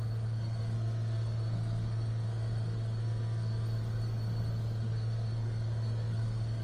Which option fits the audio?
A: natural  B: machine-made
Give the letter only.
B